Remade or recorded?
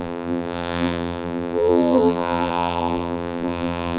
remade